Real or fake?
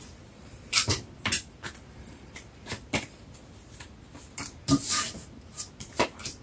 fake